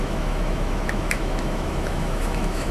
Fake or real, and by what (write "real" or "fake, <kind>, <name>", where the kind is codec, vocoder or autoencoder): fake, autoencoder, DAC-VAE